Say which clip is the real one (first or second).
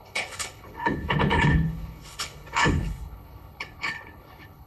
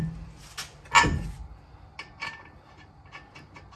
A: second